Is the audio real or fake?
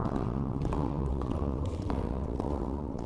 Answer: fake